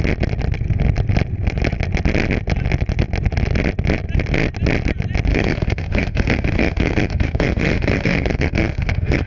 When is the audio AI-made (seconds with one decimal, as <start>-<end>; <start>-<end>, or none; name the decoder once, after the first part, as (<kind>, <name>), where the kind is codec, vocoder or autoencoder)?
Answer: 5.3-9.3 (autoencoder, DAC-VAE)